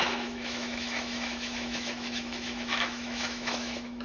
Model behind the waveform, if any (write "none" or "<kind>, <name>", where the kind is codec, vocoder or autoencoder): autoencoder, DAC-VAE